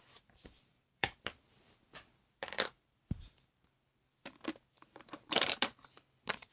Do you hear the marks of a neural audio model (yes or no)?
yes